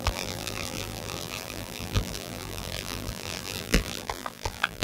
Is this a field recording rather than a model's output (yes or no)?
no